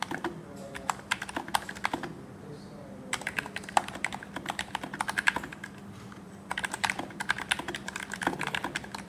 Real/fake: real